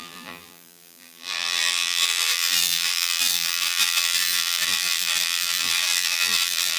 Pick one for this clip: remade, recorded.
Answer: remade